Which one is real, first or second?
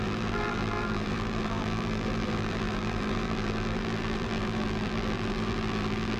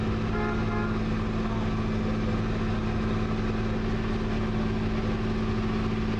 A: second